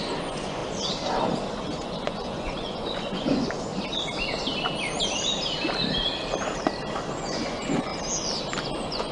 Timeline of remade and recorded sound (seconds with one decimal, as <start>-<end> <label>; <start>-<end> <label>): 0.0-0.6 remade; 0.6-1.5 recorded; 1.5-3.7 remade; 3.7-7.1 recorded; 7.1-7.9 remade; 7.9-8.6 recorded; 8.6-9.1 remade